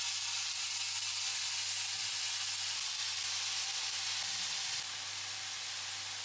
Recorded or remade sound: recorded